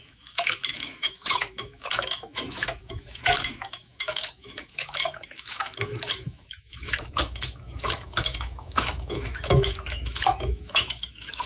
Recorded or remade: remade